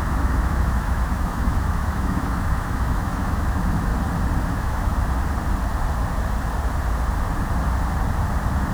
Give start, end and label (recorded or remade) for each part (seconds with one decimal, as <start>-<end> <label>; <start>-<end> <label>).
0.0-3.9 remade; 3.9-4.5 recorded; 4.5-4.9 remade; 4.9-8.7 recorded